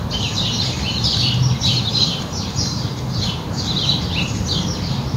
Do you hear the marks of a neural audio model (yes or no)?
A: yes